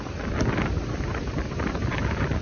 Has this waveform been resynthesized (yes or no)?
no